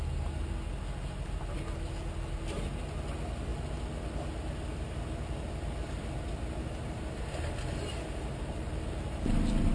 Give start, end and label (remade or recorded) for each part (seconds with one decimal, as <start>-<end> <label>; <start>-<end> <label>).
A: 0.0-7.9 recorded; 7.9-9.7 remade